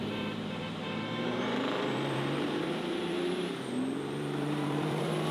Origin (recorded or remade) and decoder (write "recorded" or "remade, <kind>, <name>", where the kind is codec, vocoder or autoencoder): remade, vocoder, BigVGAN v2